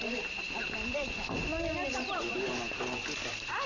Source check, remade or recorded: recorded